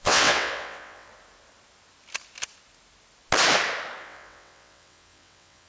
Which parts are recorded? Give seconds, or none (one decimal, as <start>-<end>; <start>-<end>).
1.1-4.0